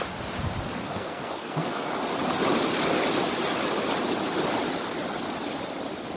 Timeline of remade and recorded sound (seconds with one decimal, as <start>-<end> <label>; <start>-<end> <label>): 0.0-0.8 recorded; 0.8-1.9 remade; 1.9-6.2 recorded